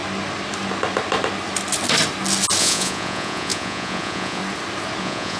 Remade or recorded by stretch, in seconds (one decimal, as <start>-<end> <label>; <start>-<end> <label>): 0.0-2.6 recorded; 2.6-4.4 remade; 4.4-5.0 recorded; 5.0-5.4 remade